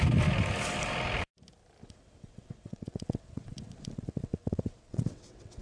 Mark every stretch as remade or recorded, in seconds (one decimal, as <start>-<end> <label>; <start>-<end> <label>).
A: 0.0-1.8 recorded; 1.8-5.6 remade

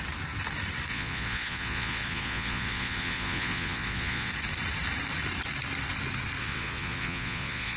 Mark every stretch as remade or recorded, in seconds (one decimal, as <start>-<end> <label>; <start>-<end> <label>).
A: 0.0-0.9 recorded; 0.9-4.3 remade; 4.3-6.4 recorded; 6.4-7.8 remade

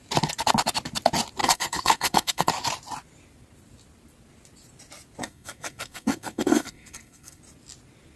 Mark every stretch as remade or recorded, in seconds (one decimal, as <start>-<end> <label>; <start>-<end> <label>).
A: 0.0-1.4 recorded; 1.4-2.5 remade; 2.5-5.2 recorded; 5.2-7.4 remade; 7.4-8.2 recorded

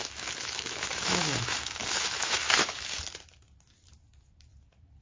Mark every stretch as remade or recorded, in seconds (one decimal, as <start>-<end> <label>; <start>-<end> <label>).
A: 0.0-3.0 remade; 3.0-5.0 recorded

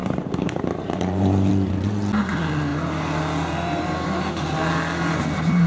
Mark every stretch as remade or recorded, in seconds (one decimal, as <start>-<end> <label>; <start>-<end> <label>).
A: 0.0-1.5 remade; 1.5-5.7 recorded

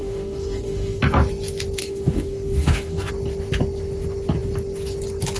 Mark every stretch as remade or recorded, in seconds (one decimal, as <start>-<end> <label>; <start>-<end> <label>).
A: 0.0-1.0 remade; 1.0-1.8 recorded; 1.8-3.1 remade; 3.1-5.4 recorded

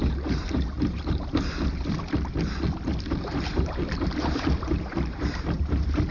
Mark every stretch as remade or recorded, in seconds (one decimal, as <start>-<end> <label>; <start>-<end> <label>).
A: 0.0-1.7 remade; 1.7-3.2 recorded; 3.2-6.1 remade

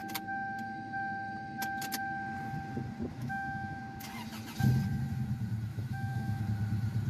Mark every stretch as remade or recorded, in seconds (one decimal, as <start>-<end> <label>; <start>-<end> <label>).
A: 0.0-3.1 recorded; 3.1-3.8 remade; 3.8-5.7 recorded; 5.7-6.4 remade; 6.4-7.1 recorded